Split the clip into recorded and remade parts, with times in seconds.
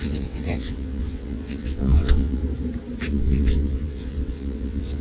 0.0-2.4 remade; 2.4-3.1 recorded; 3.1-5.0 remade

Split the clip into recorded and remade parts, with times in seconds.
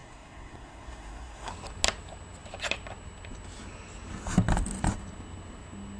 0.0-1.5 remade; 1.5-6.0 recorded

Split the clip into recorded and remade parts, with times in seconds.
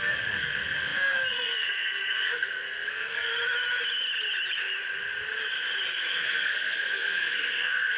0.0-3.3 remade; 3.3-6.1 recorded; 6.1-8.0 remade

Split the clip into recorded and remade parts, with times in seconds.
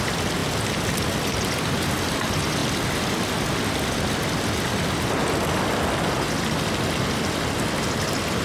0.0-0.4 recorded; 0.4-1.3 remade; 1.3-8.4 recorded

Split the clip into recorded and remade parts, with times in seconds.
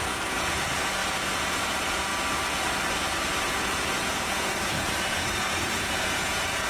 0.0-2.1 remade; 2.1-3.4 recorded; 3.4-6.7 remade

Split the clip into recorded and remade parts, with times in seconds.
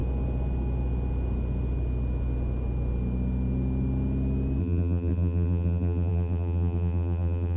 0.0-4.6 recorded; 4.6-7.6 remade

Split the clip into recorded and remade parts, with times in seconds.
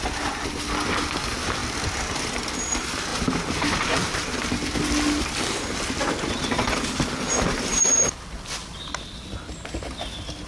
0.0-3.1 recorded; 3.1-4.4 remade; 4.4-10.5 recorded